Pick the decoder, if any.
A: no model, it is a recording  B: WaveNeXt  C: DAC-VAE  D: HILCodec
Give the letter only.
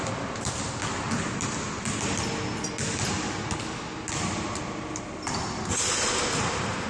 A